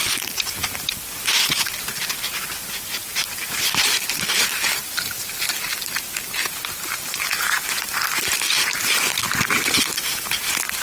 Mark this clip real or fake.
fake